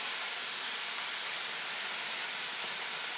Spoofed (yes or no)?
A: yes